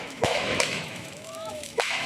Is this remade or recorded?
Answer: remade